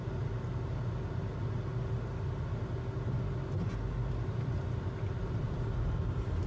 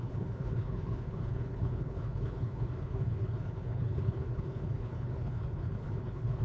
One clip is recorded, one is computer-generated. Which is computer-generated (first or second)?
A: second